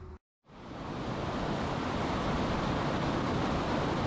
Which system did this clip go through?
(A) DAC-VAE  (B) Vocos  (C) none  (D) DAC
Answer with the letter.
C